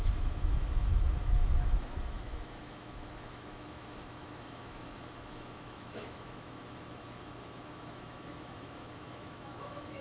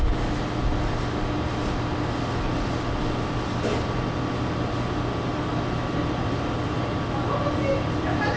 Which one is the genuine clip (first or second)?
second